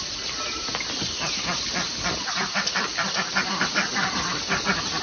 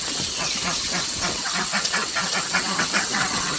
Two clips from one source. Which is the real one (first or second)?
first